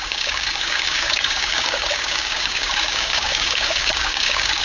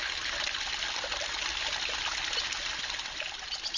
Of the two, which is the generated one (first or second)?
first